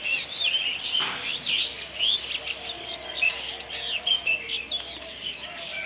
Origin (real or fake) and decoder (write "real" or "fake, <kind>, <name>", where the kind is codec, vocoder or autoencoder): real